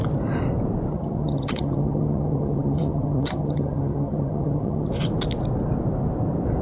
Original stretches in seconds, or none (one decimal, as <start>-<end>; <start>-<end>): 0.0-0.9; 4.9-6.6